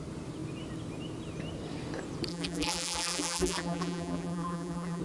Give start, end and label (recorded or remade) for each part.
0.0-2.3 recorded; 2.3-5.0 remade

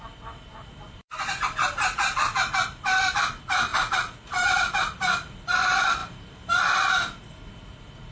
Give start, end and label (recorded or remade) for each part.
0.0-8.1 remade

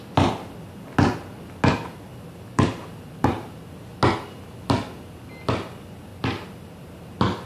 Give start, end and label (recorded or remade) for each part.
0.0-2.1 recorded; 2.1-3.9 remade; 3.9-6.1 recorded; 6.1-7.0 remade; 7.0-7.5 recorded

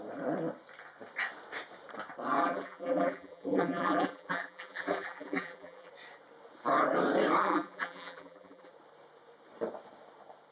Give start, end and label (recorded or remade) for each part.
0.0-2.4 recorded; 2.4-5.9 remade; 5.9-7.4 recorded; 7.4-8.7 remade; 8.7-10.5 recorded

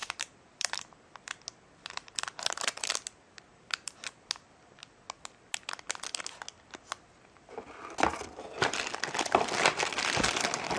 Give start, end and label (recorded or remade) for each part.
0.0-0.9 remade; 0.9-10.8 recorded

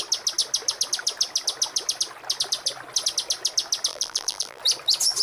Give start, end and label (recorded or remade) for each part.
0.0-3.9 recorded; 3.9-4.6 remade; 4.6-5.2 recorded

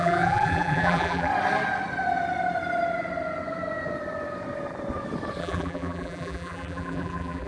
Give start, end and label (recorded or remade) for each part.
0.0-1.3 remade; 1.3-5.4 recorded; 5.4-7.5 remade